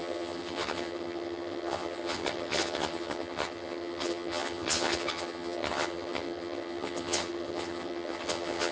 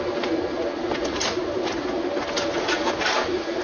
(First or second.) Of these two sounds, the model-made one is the first